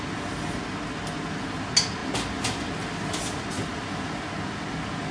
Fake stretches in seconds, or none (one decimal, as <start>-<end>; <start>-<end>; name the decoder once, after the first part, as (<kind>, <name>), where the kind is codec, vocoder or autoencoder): none